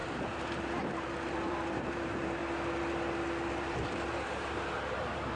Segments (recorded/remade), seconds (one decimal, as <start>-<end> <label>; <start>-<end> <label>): 0.0-2.4 remade; 2.4-3.5 recorded; 3.5-5.4 remade